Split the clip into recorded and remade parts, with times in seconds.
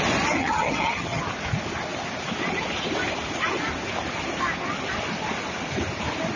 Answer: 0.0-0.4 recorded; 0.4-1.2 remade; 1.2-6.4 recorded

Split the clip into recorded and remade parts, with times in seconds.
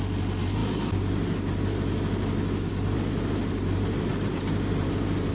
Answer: 0.0-4.1 recorded; 4.1-5.3 remade